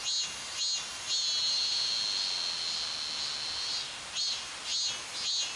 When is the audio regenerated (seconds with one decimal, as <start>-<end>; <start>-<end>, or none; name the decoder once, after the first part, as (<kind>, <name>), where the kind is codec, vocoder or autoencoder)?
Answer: none